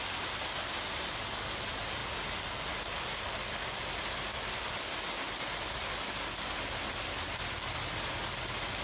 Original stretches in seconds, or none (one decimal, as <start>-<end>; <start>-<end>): 0.0-8.8